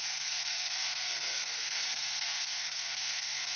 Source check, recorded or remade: remade